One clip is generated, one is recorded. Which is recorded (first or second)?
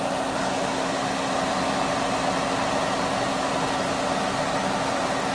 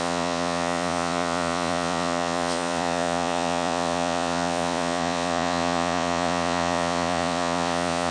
first